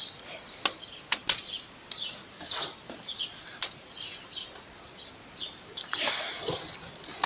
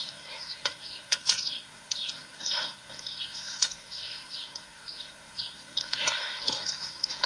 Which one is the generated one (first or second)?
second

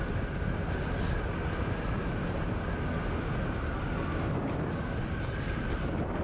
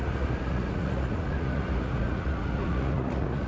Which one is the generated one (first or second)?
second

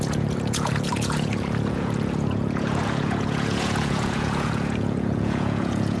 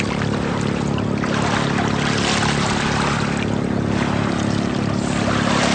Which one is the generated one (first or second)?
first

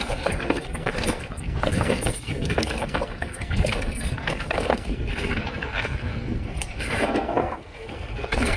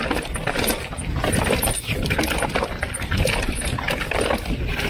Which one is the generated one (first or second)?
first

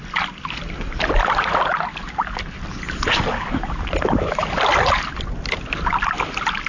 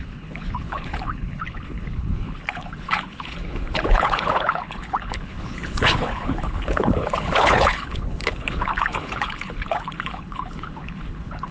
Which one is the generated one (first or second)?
second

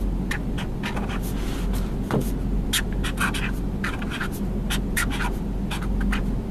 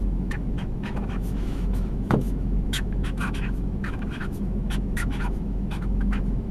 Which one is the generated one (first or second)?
second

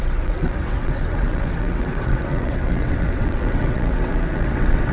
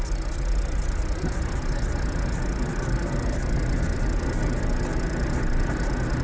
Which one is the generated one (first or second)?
first